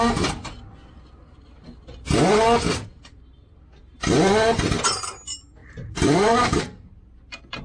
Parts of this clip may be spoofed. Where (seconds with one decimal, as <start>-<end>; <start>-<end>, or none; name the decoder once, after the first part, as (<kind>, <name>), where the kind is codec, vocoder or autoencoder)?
5.6-6.9 (vocoder, BigVGAN v2)